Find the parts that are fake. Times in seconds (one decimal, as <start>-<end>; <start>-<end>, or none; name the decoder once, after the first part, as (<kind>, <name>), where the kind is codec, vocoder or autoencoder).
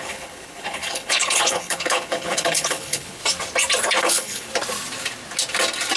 0.0-3.2 (codec, HILCodec); 4.0-4.5